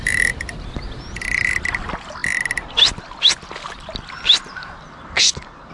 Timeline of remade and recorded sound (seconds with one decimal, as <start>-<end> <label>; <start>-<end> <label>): 0.0-5.7 recorded